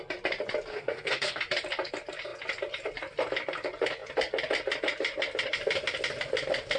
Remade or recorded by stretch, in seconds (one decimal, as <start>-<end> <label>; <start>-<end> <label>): 0.0-0.7 recorded; 0.7-1.4 remade; 1.4-6.8 recorded